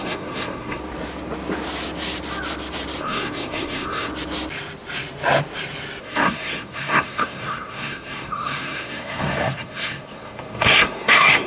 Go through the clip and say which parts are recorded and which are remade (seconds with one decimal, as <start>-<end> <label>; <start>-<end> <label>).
0.0-0.8 remade; 0.8-3.0 recorded; 3.0-4.1 remade; 4.1-6.0 recorded; 6.0-11.5 remade